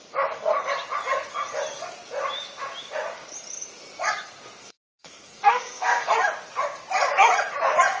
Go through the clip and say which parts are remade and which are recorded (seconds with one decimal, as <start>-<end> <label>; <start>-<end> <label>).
0.0-4.6 recorded; 4.6-6.1 remade; 6.1-8.0 recorded